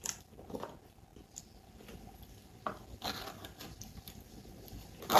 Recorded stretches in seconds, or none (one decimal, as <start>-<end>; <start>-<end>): 0.0-5.2